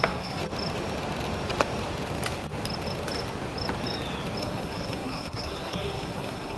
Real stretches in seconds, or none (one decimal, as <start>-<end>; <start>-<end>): 0.4-4.4